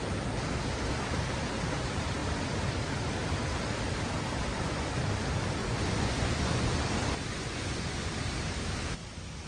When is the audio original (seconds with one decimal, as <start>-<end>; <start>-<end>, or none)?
0.0-4.5; 5.0-5.6; 6.7-7.3; 8.1-9.5